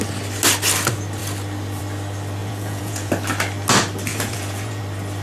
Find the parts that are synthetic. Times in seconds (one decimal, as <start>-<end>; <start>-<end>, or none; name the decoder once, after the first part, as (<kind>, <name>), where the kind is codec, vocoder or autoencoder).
2.4-3.1 (vocoder, Vocos); 4.1-4.8